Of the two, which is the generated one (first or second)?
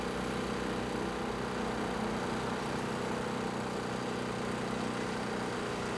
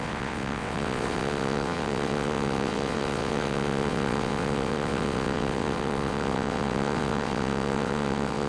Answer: second